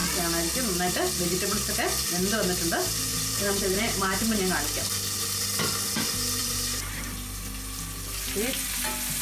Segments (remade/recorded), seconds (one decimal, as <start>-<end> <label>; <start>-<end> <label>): 0.0-3.1 recorded; 3.1-4.5 remade; 4.5-6.4 recorded; 6.4-6.9 remade; 6.9-9.2 recorded